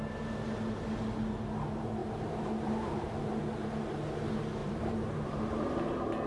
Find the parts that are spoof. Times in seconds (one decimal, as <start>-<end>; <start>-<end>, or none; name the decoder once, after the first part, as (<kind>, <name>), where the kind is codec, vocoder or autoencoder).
2.0-3.4 (vocoder, BigVGAN v2); 4.6-5.8